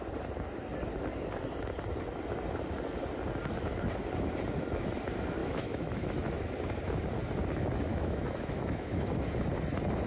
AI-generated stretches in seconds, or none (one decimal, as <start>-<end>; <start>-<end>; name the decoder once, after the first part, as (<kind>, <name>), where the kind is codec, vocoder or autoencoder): 5.4-6.5 (autoencoder, DAC-VAE); 7.9-9.4